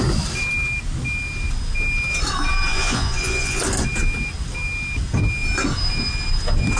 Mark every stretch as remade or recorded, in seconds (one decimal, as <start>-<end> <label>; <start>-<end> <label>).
0.0-2.7 recorded; 2.7-3.6 remade; 3.6-6.8 recorded

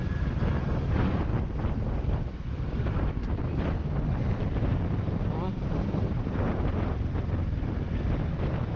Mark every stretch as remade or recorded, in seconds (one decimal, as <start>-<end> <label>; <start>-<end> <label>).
0.0-8.8 recorded

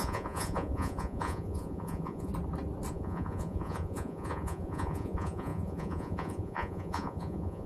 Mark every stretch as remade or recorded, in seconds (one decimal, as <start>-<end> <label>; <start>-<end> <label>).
0.0-2.3 remade; 2.3-2.9 recorded; 2.9-7.7 remade

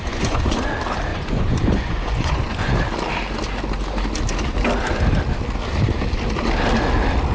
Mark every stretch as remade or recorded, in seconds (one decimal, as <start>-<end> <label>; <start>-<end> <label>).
0.0-0.6 remade; 0.6-1.1 recorded; 1.1-2.7 remade; 2.7-7.3 recorded

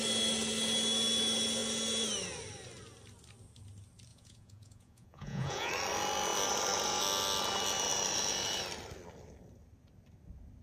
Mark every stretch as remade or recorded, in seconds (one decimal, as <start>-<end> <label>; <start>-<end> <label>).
0.0-4.1 recorded; 4.1-5.7 remade; 5.7-10.6 recorded

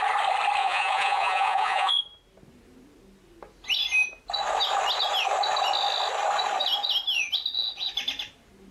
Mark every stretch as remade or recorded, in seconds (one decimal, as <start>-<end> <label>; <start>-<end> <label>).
0.0-0.6 recorded; 0.6-2.0 remade; 2.0-8.7 recorded

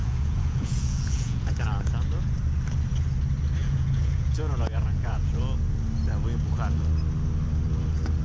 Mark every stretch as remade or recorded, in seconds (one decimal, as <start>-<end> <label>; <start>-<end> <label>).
0.0-1.5 remade; 1.5-3.6 recorded; 3.6-5.4 remade; 5.4-8.2 recorded